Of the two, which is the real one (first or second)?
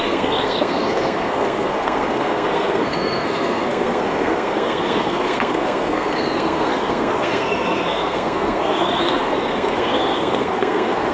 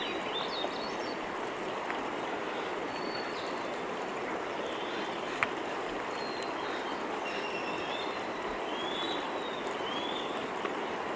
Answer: second